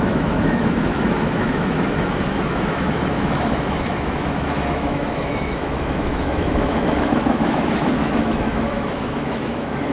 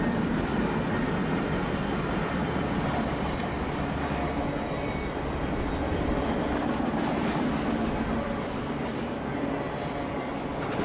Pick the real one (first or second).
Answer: second